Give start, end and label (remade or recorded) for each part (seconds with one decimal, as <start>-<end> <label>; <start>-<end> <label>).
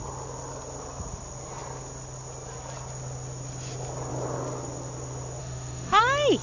0.0-5.4 recorded; 5.4-6.0 remade; 6.0-6.4 recorded